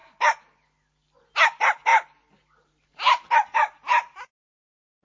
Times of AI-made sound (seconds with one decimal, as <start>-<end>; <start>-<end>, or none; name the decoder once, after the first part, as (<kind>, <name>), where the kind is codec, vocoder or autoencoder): 1.9-5.0 (vocoder, BigVGAN v2)